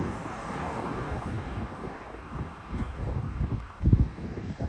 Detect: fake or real fake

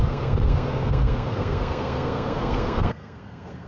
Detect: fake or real fake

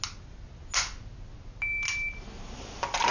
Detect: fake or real real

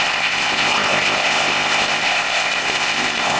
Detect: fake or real fake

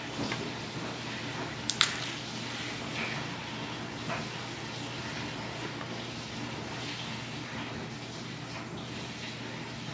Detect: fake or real real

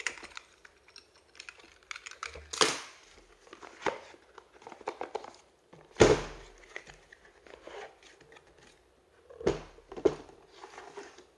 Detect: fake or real real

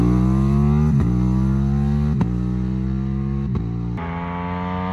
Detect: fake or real real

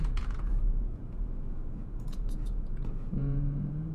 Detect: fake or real fake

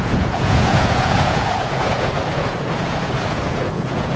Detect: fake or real fake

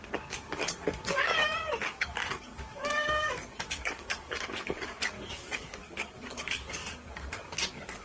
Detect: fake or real fake